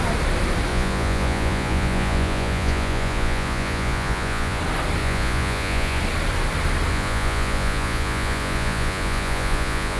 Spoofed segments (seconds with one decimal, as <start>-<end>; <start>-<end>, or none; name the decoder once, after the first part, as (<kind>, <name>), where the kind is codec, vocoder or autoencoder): 0.7-4.6 (vocoder, Vocos); 5.0-6.0; 6.9-10.0